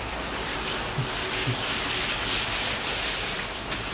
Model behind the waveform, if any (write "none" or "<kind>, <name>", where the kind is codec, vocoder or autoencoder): none